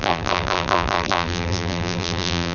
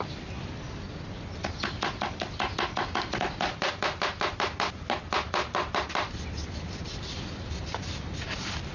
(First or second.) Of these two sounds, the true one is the second